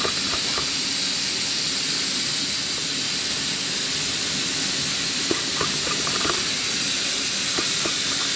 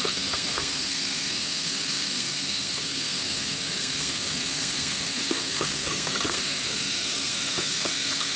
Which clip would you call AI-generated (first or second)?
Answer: second